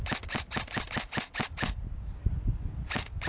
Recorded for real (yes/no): yes